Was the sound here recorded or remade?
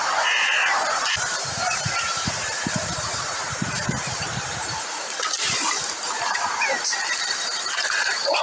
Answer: remade